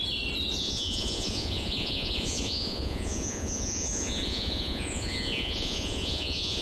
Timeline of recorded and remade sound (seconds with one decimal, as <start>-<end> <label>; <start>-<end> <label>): 0.0-0.6 recorded; 0.6-6.6 remade